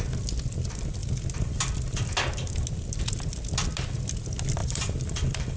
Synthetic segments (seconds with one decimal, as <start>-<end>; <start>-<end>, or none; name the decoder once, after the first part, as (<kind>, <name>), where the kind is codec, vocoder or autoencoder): 4.6-5.6 (vocoder, BigVGAN v2)